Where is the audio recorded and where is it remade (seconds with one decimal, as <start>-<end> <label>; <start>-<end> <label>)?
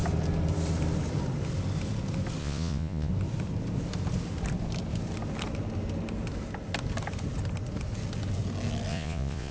0.0-2.4 recorded; 2.4-3.1 remade; 3.1-8.9 recorded; 8.9-9.5 remade